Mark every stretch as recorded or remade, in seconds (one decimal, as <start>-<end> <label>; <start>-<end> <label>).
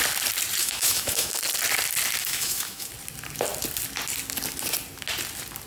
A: 0.0-0.6 recorded; 0.6-1.4 remade; 1.4-2.2 recorded; 2.2-2.9 remade; 2.9-5.7 recorded